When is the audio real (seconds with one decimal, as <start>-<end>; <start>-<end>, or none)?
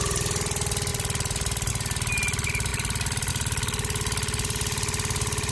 0.0-5.5